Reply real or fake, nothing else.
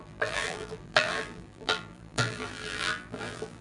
fake